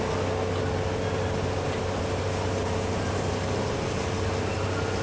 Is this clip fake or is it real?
real